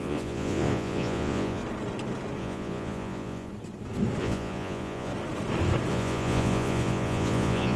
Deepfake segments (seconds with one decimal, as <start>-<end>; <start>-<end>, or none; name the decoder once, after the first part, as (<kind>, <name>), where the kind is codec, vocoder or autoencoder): 0.0-1.6 (vocoder, Vocos); 2.4-3.5; 4.2-5.1; 5.9-7.8